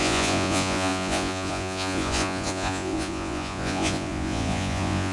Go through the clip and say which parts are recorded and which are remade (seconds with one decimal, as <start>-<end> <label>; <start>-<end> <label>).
0.0-5.1 remade